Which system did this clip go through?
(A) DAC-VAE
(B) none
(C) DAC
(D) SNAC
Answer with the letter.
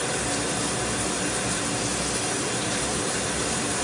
B